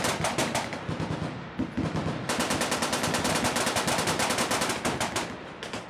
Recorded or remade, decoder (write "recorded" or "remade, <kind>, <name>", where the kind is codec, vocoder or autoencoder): recorded